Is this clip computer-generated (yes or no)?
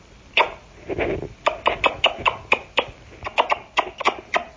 no